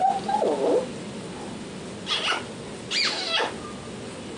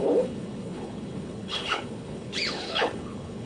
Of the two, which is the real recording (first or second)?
first